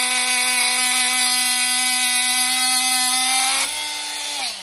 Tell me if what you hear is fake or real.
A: real